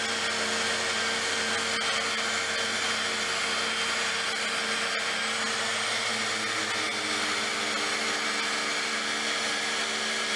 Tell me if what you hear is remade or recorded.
recorded